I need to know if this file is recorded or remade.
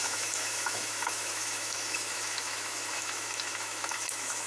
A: remade